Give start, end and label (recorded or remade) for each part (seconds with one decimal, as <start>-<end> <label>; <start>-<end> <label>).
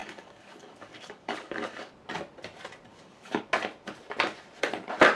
0.0-1.9 remade; 1.9-2.9 recorded; 2.9-3.4 remade; 3.4-5.1 recorded